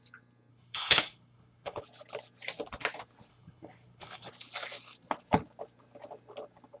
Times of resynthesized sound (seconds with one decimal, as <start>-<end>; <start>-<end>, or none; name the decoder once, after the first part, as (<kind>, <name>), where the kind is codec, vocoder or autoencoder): 0.5-1.8 (codec, HILCodec); 3.3-4.3